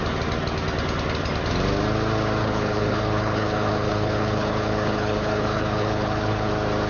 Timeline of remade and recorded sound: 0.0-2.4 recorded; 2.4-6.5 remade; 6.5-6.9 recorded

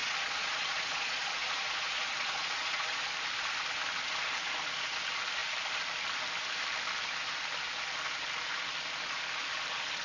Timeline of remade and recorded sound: 0.0-3.1 remade; 3.1-10.0 recorded

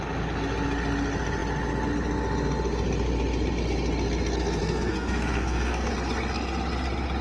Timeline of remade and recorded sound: 0.0-4.6 recorded; 4.6-5.9 remade; 5.9-7.2 recorded

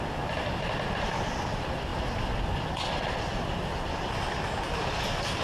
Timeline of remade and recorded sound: 0.0-5.4 recorded

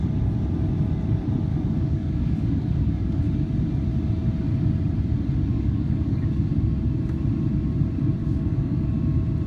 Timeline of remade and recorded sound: 0.0-1.5 recorded; 1.5-3.2 remade; 3.2-5.5 recorded; 5.5-6.5 remade; 6.5-8.2 recorded; 8.2-8.9 remade; 8.9-9.5 recorded

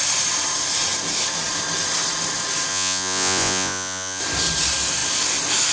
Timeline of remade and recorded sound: 0.0-2.7 recorded; 2.7-4.2 remade; 4.2-5.7 recorded